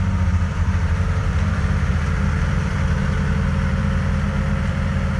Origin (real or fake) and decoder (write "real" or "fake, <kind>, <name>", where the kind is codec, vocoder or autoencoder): fake, vocoder, BigVGAN v2